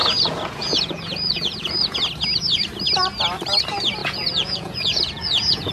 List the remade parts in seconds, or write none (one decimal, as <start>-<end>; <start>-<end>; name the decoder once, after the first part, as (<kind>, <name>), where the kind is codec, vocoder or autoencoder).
0.0-2.0 (vocoder, Vocos); 4.0-5.7